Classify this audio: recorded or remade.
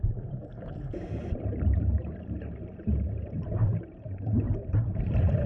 remade